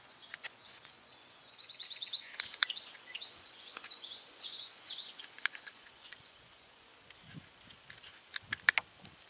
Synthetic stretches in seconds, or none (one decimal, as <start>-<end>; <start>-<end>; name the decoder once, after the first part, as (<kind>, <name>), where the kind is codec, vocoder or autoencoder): 0.0-6.9 (vocoder, Vocos)